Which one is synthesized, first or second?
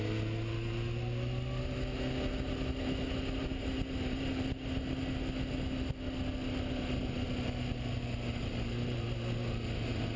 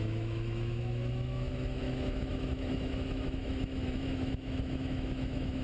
second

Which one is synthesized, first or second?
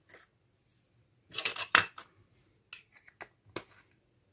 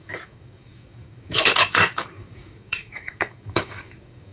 second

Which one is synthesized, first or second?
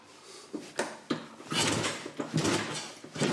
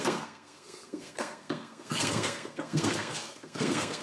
second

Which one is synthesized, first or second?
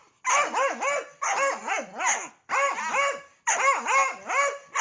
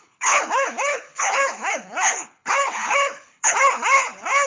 second